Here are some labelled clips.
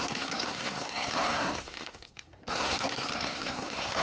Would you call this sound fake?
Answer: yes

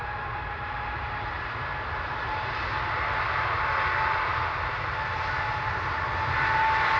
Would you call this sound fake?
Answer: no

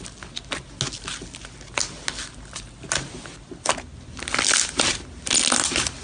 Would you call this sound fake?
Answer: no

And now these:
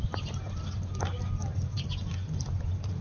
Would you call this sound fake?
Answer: no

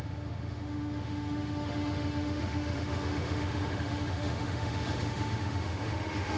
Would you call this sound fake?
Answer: yes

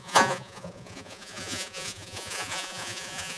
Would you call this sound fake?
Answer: yes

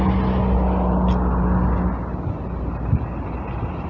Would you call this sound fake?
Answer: no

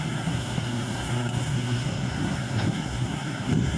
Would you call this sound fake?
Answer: yes